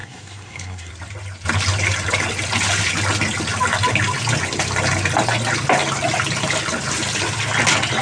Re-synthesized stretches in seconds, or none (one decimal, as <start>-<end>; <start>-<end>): 0.0-0.9